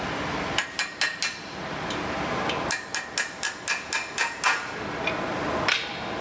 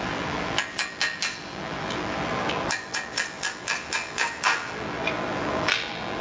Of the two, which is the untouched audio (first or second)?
first